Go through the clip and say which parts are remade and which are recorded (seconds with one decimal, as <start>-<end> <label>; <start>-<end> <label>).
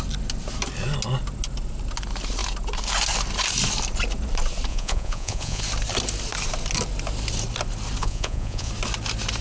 0.0-4.7 recorded; 4.7-5.6 remade; 5.6-8.0 recorded; 8.0-8.7 remade; 8.7-9.4 recorded